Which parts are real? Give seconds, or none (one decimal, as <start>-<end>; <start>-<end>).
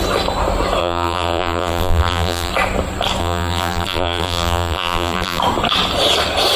0.0-0.8; 2.5-3.2; 5.4-6.6